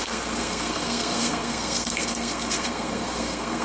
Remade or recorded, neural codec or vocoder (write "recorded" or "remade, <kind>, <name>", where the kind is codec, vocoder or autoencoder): remade, codec, SNAC